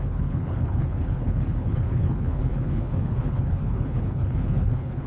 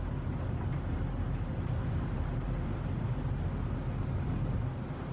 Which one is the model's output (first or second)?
first